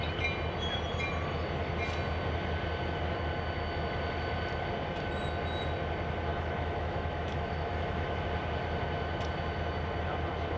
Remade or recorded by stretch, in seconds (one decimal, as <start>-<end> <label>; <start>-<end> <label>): 0.0-6.3 recorded; 6.3-8.2 remade; 8.2-10.6 recorded